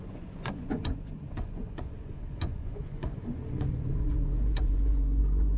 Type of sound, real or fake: fake